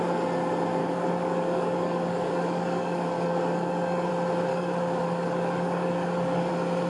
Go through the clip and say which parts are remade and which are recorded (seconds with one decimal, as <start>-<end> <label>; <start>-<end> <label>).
0.0-0.8 recorded; 0.8-4.1 remade; 4.1-4.5 recorded; 4.5-6.5 remade; 6.5-6.9 recorded